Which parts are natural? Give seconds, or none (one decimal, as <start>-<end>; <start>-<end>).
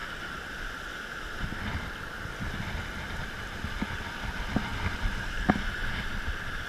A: 0.0-6.7